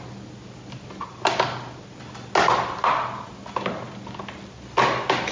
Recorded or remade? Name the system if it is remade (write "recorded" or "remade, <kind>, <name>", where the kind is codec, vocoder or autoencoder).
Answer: recorded